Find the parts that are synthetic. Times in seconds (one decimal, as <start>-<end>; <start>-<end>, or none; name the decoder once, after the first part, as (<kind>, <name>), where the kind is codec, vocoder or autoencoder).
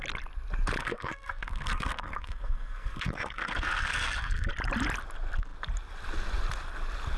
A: 0.8-4.5 (codec, SNAC)